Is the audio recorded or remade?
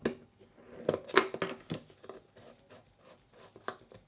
recorded